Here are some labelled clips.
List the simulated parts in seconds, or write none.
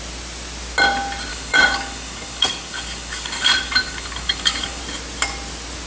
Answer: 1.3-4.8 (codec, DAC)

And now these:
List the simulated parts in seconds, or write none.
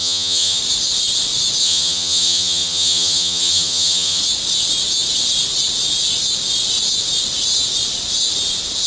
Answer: 0.0-0.6 (vocoder, HiFi-GAN); 1.6-4.2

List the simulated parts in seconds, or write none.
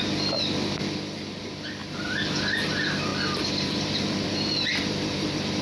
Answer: 1.8-2.7 (vocoder, BigVGAN v2); 3.1-5.6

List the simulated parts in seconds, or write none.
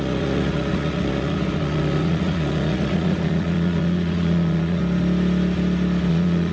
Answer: 0.0-4.8 (vocoder, Vocos); 6.1-6.5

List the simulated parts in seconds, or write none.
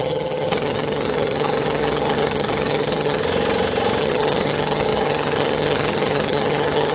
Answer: 0.0-3.2 (vocoder, HiFi-GAN); 4.0-6.9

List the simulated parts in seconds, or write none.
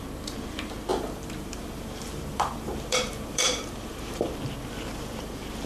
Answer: 0.9-4.3 (vocoder, BigVGAN v2)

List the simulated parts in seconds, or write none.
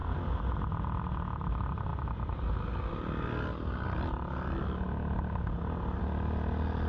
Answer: none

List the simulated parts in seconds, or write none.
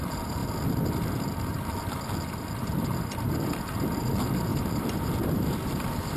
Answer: 4.5-6.2 (vocoder, BigVGAN v2)